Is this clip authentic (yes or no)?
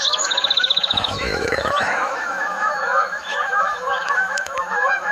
no